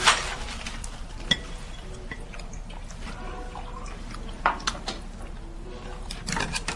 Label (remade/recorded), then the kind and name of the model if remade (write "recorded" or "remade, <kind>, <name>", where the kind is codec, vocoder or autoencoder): recorded